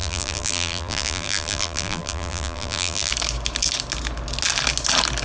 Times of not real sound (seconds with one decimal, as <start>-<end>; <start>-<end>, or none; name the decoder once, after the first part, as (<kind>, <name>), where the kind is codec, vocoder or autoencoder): 0.0-3.1 (vocoder, BigVGAN v2)